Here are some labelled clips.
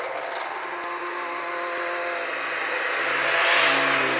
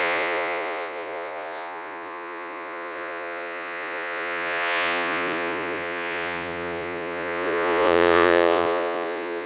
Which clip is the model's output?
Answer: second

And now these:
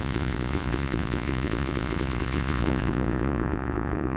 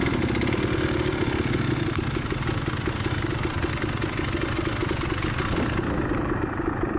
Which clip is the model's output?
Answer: first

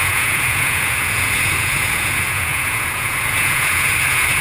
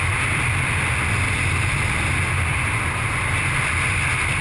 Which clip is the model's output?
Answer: first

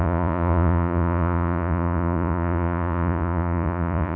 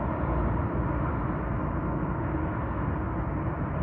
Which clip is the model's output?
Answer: first